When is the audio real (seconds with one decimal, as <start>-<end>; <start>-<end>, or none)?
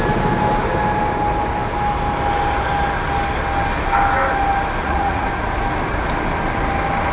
0.0-4.8; 5.3-7.1